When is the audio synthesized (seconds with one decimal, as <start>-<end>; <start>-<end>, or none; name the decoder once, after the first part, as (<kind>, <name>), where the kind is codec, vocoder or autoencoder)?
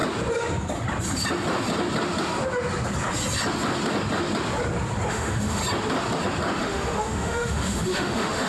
5.1-5.6 (autoencoder, DAC-VAE); 6.6-8.5